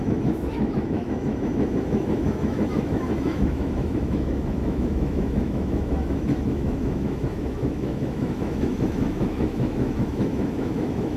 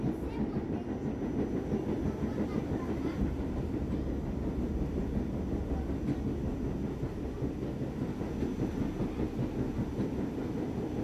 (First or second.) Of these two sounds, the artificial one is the first